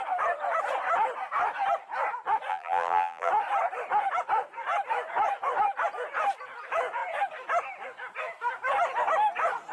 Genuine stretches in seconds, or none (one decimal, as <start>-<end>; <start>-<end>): 0.0-2.5; 3.3-9.7